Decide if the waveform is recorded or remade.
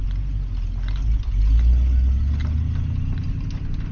recorded